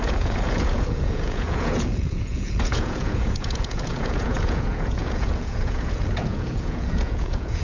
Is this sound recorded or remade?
remade